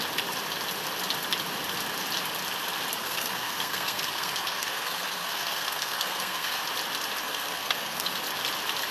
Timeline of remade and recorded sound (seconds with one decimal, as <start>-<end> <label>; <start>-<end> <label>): 0.0-3.0 recorded; 3.0-6.6 remade; 6.6-7.2 recorded; 7.2-8.2 remade; 8.2-8.9 recorded